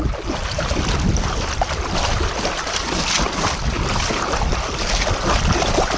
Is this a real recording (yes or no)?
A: yes